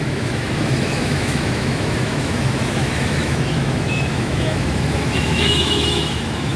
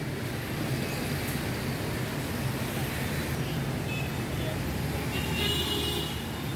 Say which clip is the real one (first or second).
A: second